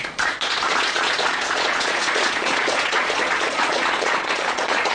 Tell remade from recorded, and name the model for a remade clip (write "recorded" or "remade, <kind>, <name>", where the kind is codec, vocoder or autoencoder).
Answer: remade, vocoder, Vocos